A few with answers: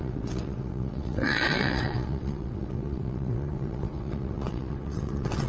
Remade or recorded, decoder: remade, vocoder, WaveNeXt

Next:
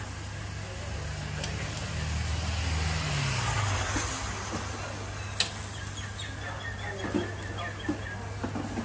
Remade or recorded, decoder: recorded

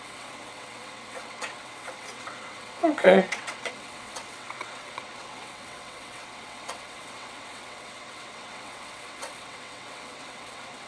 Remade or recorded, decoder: remade, vocoder, WaveNeXt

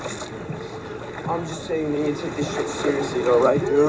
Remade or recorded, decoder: recorded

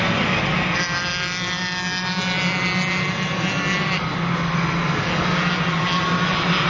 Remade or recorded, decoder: recorded